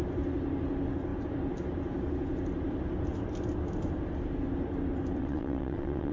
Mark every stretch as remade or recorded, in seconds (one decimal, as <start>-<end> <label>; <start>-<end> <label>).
0.0-5.2 recorded; 5.2-6.1 remade